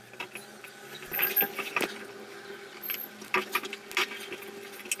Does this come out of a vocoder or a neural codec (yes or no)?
no